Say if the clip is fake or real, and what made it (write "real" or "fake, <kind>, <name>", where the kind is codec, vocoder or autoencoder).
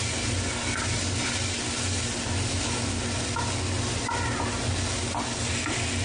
real